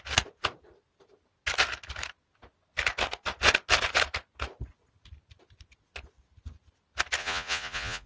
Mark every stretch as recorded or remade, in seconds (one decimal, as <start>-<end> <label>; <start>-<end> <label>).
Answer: 0.0-7.2 recorded; 7.2-8.1 remade